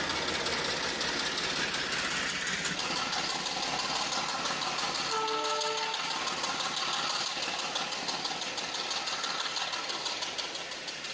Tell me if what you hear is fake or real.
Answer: real